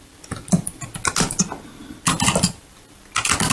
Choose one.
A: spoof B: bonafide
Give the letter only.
B